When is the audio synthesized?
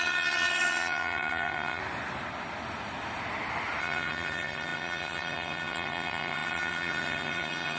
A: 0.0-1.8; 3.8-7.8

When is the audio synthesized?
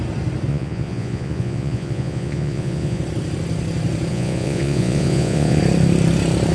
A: 0.5-3.0; 4.1-5.6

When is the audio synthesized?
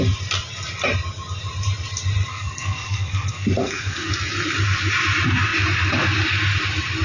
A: 2.3-4.1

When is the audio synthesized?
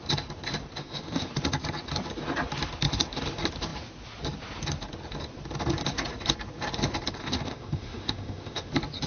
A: 0.8-1.3; 7.2-8.7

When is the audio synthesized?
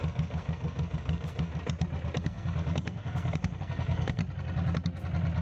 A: 0.0-1.5; 2.2-4.2